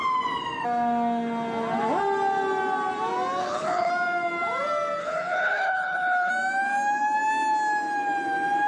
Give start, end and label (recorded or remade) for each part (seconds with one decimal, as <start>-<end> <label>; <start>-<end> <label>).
0.0-3.4 recorded; 3.4-3.9 remade; 3.9-5.0 recorded; 5.0-6.3 remade; 6.3-8.7 recorded